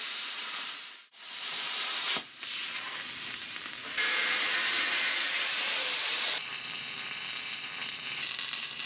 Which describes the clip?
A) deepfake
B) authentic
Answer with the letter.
A